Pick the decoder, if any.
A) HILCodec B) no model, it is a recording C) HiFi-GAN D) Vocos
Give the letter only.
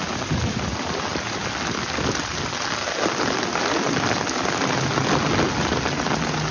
B